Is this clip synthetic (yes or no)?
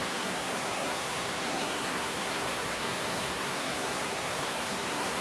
yes